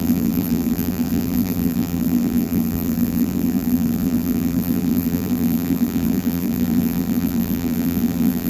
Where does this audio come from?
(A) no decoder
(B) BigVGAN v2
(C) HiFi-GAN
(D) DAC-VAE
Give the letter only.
B